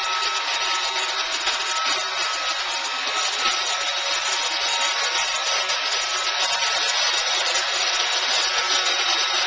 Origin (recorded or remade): recorded